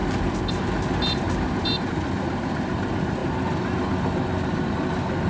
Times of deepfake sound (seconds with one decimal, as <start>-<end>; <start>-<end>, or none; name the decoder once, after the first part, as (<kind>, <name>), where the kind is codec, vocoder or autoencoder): 0.0-3.2 (vocoder, BigVGAN v2)